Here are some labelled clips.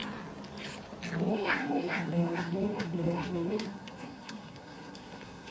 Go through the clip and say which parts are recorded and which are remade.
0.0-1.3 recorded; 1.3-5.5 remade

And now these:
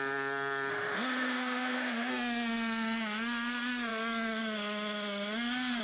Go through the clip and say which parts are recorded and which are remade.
0.0-0.7 recorded; 0.7-2.1 remade; 2.1-5.8 recorded

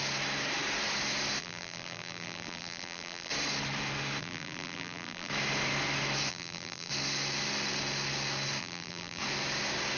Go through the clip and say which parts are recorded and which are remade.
0.0-1.4 recorded; 1.4-3.3 remade; 3.3-4.2 recorded; 4.2-5.3 remade; 5.3-6.3 recorded; 6.3-6.9 remade; 6.9-8.6 recorded; 8.6-9.2 remade; 9.2-10.0 recorded

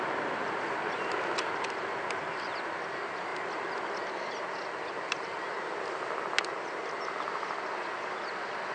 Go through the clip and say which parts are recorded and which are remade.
0.0-8.7 recorded

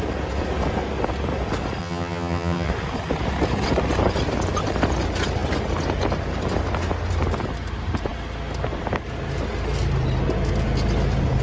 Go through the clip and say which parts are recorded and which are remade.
0.0-1.8 recorded; 1.8-2.7 remade; 2.7-11.4 recorded

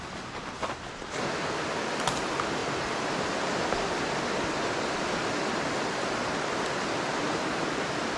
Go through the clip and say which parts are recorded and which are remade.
0.0-8.2 recorded

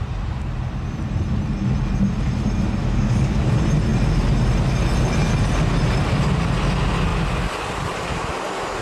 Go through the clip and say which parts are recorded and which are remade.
0.0-2.8 recorded; 2.8-3.5 remade; 3.5-8.8 recorded

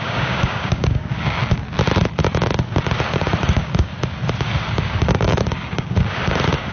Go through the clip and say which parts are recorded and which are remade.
0.0-1.4 remade; 1.4-3.1 recorded; 3.1-3.9 remade; 3.9-4.7 recorded; 4.7-6.7 remade